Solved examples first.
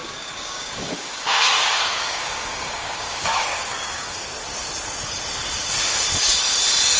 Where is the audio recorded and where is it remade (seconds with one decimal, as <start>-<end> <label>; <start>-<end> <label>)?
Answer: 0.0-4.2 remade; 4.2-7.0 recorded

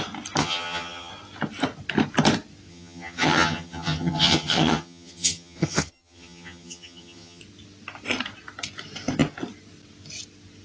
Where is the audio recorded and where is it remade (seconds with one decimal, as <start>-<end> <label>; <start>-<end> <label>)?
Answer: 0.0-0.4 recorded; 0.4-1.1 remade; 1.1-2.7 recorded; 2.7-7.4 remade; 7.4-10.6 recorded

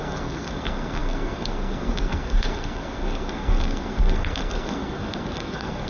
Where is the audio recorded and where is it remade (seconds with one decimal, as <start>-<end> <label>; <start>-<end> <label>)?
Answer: 0.0-5.9 remade

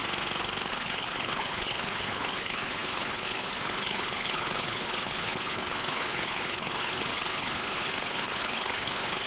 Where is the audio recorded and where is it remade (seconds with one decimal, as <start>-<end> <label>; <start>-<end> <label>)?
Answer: 0.0-0.7 recorded; 0.7-9.3 remade